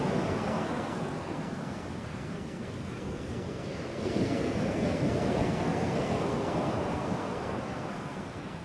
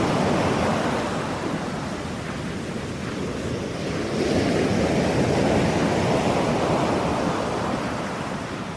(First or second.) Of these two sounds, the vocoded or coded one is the first